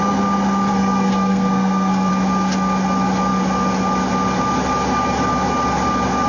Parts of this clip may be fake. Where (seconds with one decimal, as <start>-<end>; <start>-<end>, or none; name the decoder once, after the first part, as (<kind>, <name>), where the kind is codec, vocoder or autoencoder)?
0.7-2.1 (codec, SNAC)